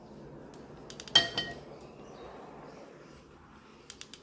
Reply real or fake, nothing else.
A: real